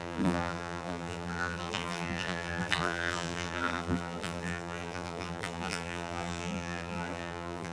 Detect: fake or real fake